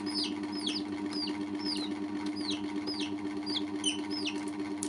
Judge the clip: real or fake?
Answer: real